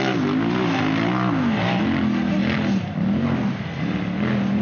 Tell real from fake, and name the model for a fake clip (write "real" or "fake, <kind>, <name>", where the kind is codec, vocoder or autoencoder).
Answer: real